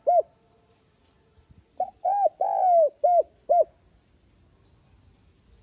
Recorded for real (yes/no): yes